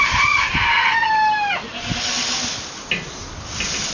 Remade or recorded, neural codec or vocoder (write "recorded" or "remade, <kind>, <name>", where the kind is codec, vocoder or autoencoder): recorded